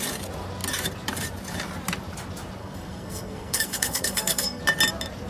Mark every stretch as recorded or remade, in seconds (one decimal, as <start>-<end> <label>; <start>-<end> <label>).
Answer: 0.0-2.6 recorded; 2.6-4.6 remade; 4.6-5.3 recorded